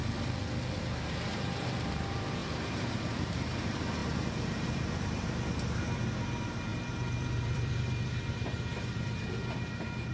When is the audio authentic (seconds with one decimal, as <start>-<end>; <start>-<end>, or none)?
0.0-0.8